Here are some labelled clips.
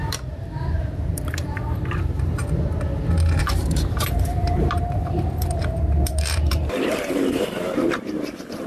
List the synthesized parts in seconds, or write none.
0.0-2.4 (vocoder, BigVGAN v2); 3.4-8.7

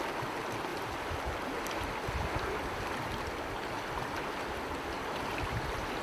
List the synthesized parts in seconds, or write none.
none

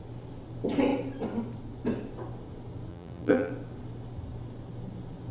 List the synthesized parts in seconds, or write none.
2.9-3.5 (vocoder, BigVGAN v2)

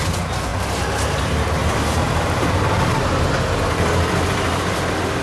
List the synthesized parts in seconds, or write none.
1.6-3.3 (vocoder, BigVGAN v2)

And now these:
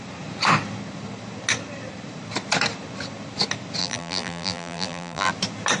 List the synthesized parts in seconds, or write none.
3.8-5.3 (vocoder, BigVGAN v2)